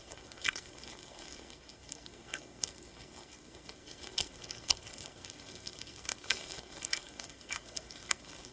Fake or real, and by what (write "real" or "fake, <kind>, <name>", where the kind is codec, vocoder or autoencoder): fake, codec, SNAC